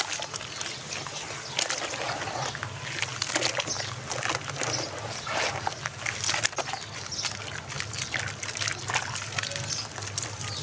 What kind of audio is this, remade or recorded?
recorded